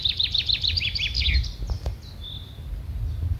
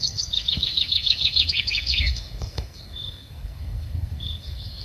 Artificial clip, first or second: second